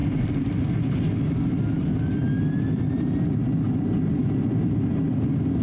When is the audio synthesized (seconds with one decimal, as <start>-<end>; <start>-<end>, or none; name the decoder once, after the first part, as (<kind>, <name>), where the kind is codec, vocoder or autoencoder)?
none